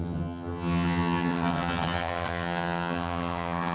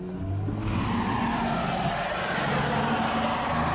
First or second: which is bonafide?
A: second